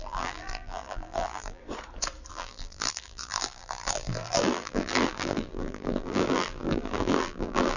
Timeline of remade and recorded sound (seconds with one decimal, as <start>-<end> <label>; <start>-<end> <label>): 0.0-1.6 remade; 1.6-2.3 recorded; 2.3-7.8 remade